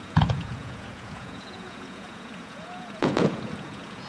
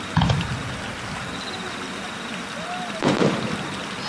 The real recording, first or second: second